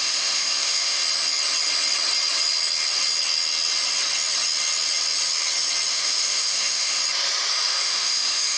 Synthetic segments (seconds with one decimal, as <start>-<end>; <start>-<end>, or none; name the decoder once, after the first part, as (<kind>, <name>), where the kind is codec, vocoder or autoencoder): 0.0-1.0 (autoencoder, DAC-VAE); 5.9-7.0; 7.5-8.6